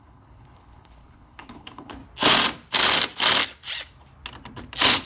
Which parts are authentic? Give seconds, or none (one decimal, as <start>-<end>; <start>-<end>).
2.0-5.1